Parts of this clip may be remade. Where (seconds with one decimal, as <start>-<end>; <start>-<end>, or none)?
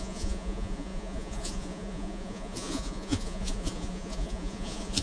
0.0-5.0